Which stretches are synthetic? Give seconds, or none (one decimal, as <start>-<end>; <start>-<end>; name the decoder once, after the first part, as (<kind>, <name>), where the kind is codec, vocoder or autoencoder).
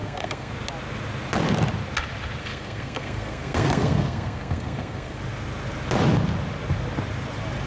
0.0-0.5 (codec, SNAC); 2.4-5.2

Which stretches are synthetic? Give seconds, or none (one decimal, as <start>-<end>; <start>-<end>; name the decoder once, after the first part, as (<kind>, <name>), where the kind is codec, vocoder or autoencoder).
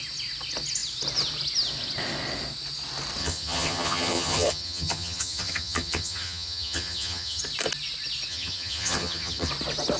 3.2-7.4 (vocoder, HiFi-GAN); 8.3-9.5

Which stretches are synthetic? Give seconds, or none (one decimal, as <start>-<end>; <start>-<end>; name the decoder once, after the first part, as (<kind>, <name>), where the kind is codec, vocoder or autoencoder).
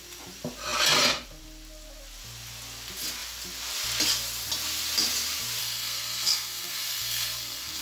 5.6-7.8 (codec, SNAC)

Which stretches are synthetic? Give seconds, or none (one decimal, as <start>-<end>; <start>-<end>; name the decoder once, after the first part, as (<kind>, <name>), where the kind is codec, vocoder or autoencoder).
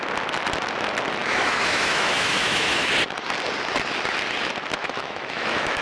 1.2-2.9 (autoencoder, DAC-VAE); 4.8-5.8